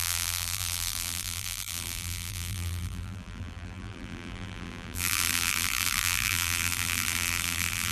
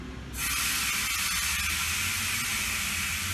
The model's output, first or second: first